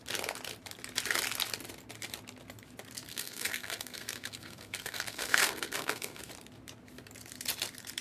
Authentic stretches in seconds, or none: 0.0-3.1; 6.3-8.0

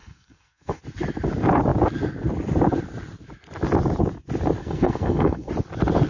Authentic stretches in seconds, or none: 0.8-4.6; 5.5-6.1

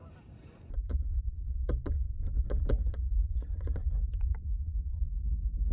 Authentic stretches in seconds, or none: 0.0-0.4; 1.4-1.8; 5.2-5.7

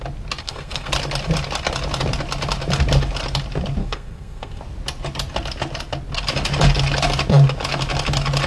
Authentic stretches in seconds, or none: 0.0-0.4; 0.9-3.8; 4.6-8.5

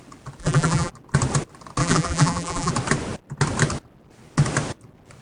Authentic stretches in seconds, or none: 0.0-0.4; 0.9-1.8; 2.7-5.2

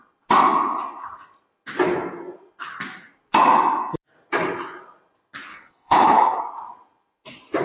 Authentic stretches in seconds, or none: 0.0-5.5; 6.4-7.6

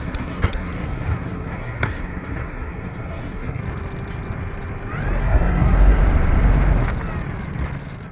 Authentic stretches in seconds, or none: 3.6-5.2; 6.0-8.1